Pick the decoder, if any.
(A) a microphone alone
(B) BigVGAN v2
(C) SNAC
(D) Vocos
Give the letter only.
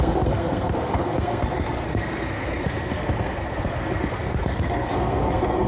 C